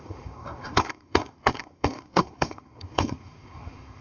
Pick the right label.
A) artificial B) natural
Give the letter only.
A